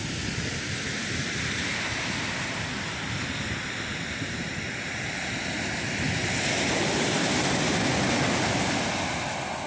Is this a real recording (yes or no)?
yes